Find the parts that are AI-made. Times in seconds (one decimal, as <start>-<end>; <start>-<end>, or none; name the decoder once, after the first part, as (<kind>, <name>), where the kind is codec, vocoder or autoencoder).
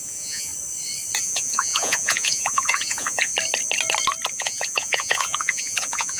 0.0-0.5 (vocoder, Vocos); 1.2-3.3; 4.3-6.2